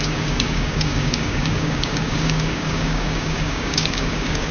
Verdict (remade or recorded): remade